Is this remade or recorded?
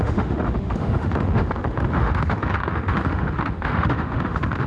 remade